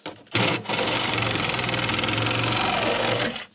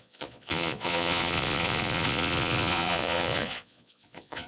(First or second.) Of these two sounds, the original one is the first